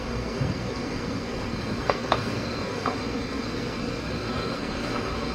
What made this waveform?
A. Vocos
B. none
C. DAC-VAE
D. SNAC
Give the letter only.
D